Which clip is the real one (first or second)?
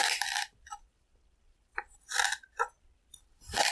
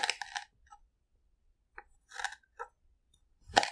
second